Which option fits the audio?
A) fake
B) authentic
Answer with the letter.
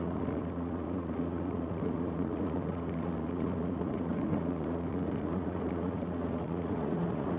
A